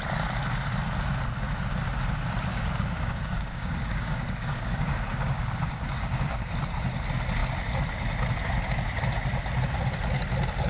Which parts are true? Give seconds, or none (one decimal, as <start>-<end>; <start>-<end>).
0.0-2.5; 6.5-10.7